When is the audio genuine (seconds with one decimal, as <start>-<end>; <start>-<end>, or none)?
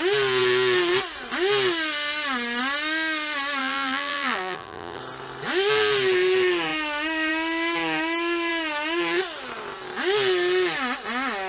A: 0.0-3.6; 5.0-11.5